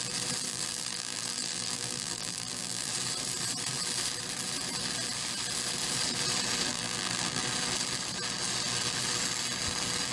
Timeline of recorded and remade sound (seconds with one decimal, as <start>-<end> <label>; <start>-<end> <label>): 0.0-0.5 recorded; 0.5-2.9 remade; 2.9-6.7 recorded; 6.7-7.4 remade; 7.4-10.1 recorded